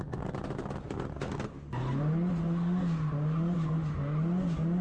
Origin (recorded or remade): recorded